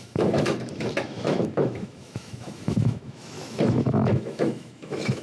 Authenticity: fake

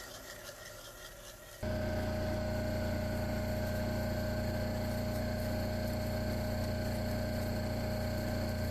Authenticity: real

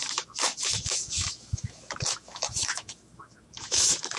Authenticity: fake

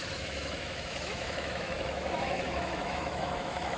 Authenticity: fake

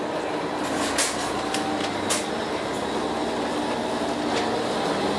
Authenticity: real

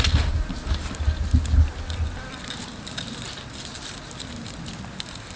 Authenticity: real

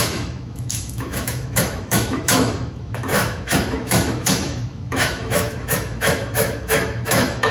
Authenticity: fake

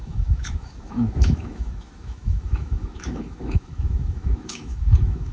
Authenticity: fake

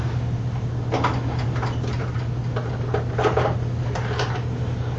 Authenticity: real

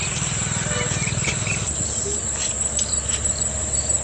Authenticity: real